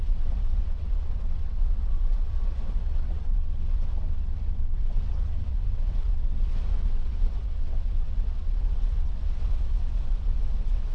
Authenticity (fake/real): fake